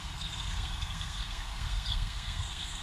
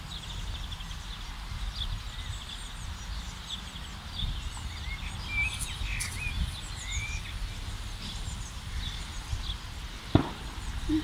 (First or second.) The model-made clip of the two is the first